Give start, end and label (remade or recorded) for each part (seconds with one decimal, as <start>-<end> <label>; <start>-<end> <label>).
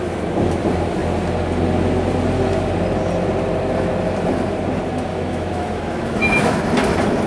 0.0-5.1 recorded; 5.1-6.6 remade; 6.6-7.3 recorded